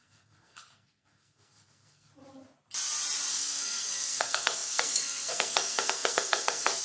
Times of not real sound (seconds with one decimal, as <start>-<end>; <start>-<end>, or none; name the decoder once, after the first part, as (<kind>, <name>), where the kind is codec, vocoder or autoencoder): 0.0-2.1 (codec, SNAC); 3.3-6.8